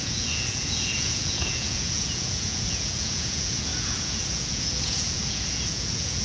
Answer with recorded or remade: remade